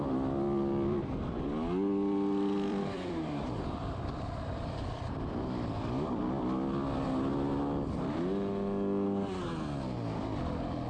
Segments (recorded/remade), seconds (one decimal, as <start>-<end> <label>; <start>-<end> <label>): 0.0-2.7 recorded; 2.7-6.2 remade; 6.2-10.9 recorded